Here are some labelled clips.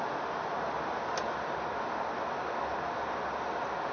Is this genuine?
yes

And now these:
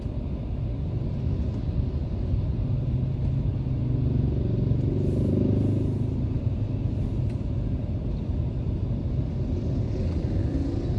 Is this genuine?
yes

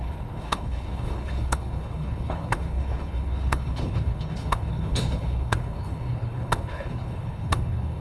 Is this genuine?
no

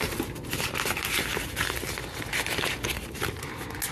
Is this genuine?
yes